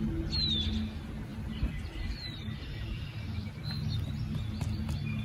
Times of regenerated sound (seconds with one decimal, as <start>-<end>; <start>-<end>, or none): 1.3-4.4